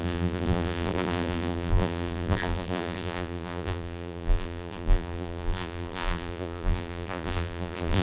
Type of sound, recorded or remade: remade